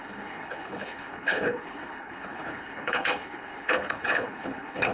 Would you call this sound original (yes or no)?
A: no